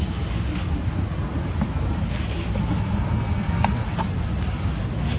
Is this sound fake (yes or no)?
no